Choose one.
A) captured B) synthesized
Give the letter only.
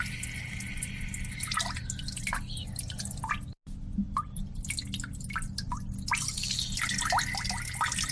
A